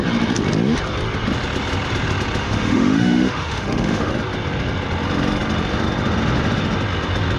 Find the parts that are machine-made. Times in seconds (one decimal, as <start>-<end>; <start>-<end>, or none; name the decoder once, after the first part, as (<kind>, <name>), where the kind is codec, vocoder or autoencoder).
2.4-4.1 (autoencoder, DAC-VAE)